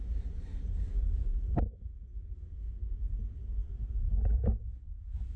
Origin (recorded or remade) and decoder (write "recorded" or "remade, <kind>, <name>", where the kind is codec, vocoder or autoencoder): recorded